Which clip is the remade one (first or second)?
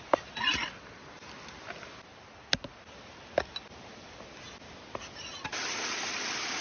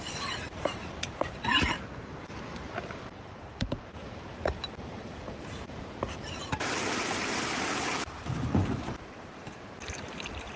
second